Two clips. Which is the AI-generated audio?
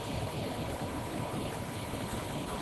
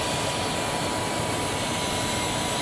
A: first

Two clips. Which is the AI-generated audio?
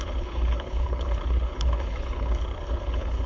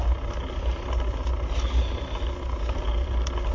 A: first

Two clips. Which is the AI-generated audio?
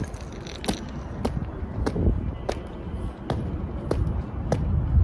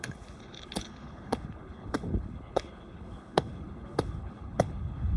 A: second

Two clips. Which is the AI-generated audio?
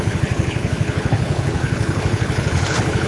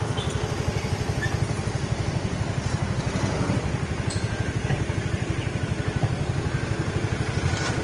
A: first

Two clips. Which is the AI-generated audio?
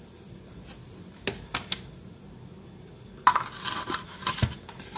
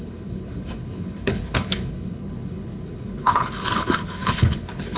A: second